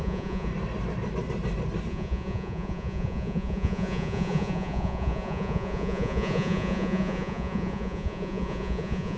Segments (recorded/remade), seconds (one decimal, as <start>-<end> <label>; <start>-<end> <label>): 0.0-0.5 remade; 0.5-1.9 recorded; 1.9-9.2 remade